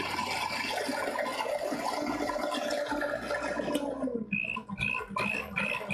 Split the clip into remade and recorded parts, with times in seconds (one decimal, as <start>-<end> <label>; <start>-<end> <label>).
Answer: 0.0-5.3 recorded; 5.3-5.9 remade